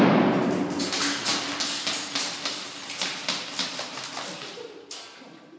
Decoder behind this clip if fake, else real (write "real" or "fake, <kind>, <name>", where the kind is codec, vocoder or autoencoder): real